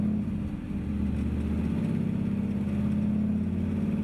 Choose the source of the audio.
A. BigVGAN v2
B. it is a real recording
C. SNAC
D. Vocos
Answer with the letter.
B